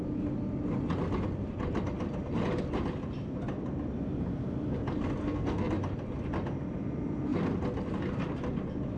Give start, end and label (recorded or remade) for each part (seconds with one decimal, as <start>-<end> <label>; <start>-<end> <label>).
0.0-5.2 recorded; 5.2-5.7 remade; 5.7-9.0 recorded